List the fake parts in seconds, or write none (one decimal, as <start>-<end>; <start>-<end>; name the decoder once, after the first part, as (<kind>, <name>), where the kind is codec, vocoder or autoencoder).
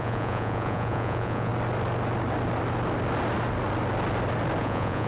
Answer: 0.0-1.5 (vocoder, Vocos); 4.6-5.1